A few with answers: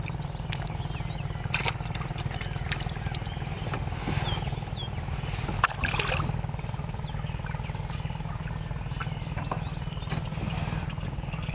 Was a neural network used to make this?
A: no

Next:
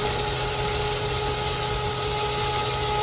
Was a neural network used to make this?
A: no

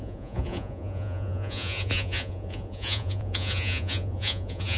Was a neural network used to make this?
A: yes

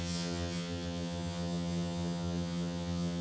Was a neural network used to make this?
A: yes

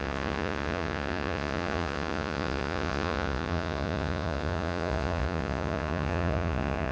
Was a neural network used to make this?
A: yes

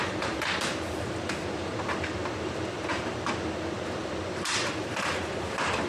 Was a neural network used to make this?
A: yes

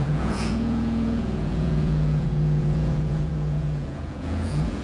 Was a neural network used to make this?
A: yes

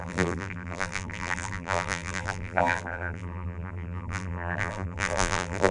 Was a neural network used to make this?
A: yes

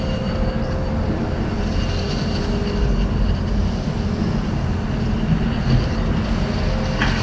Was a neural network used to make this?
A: no